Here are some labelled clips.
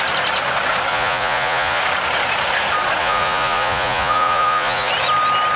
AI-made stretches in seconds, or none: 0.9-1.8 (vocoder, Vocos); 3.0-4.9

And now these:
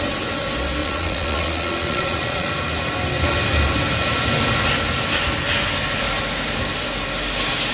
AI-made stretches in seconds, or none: 0.8-2.5 (vocoder, Vocos)

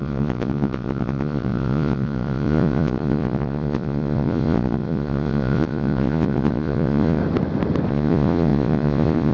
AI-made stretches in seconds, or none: 0.0-7.2 (vocoder, Vocos); 7.9-9.3

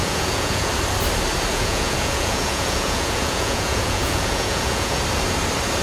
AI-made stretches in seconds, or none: 0.0-0.7 (vocoder, Vocos); 1.5-5.0